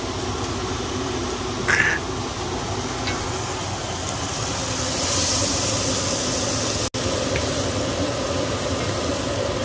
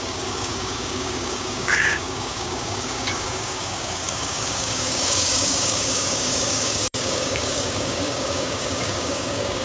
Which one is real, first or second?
first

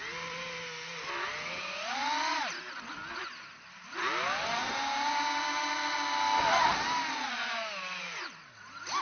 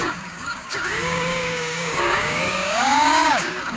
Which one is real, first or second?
first